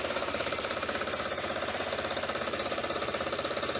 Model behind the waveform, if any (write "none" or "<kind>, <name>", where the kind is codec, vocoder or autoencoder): vocoder, BigVGAN v2